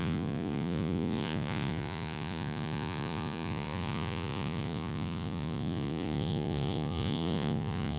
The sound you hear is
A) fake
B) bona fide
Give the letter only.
A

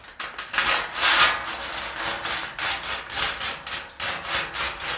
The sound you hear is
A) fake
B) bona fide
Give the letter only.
B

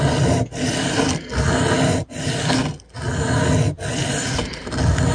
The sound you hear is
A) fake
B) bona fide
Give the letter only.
B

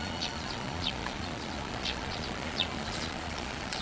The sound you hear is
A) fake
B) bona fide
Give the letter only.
A